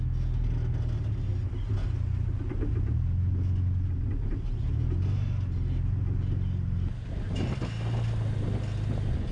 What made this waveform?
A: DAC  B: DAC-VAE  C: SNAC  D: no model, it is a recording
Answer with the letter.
D